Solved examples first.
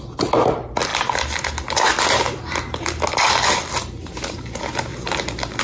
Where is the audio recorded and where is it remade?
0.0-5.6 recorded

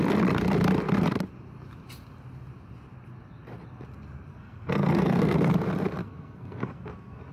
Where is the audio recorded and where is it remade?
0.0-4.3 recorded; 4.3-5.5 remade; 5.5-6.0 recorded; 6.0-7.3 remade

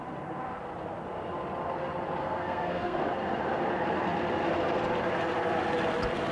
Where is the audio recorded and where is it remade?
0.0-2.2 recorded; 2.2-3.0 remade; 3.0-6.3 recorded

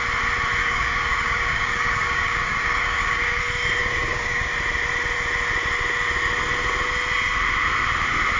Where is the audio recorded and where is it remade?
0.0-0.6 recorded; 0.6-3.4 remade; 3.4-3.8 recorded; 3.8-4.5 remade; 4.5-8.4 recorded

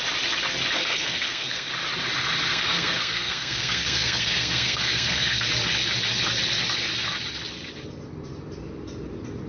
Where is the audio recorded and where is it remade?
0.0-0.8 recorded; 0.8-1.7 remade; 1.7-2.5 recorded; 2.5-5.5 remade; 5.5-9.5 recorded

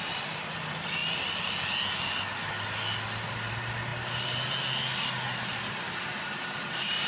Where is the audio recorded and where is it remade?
0.0-7.1 recorded

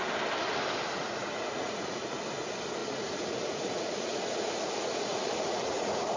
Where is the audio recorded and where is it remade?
0.0-1.0 recorded; 1.0-2.2 remade; 2.2-2.8 recorded; 2.8-6.2 remade